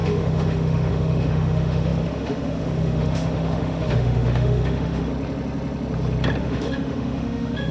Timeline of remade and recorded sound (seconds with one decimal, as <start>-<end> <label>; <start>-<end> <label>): 0.0-5.1 remade; 5.1-6.4 recorded; 6.4-7.7 remade